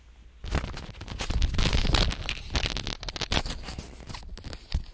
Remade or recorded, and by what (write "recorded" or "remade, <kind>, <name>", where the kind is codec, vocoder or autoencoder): recorded